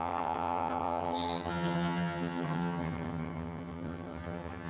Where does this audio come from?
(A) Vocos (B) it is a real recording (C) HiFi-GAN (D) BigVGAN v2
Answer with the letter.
C